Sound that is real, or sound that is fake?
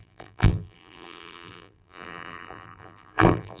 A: fake